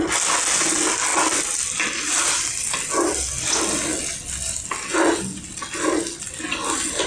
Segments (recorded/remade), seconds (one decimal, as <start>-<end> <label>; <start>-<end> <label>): 0.0-7.1 recorded